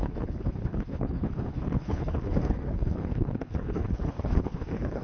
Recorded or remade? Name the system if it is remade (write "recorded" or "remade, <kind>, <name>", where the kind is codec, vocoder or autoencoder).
remade, codec, HILCodec